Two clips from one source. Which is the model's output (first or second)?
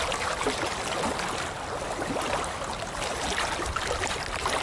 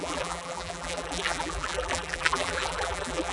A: second